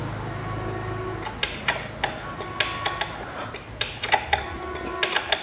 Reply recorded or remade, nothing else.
recorded